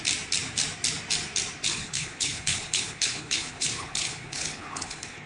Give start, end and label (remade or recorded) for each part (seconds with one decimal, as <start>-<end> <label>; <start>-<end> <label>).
0.0-1.7 recorded; 1.7-5.3 remade